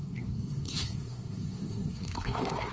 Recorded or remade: remade